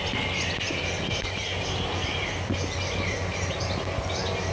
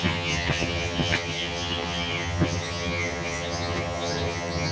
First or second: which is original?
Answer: first